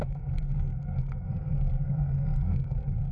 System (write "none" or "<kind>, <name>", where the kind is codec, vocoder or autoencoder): codec, SNAC